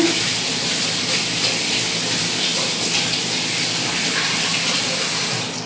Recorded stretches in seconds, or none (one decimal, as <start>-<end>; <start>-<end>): 0.0-5.7